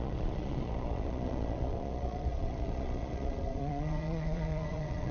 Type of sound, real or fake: fake